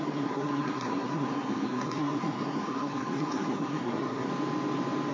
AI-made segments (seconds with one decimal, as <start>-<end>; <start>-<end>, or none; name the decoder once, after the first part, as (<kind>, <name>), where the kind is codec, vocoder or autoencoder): 0.0-4.3 (codec, SNAC)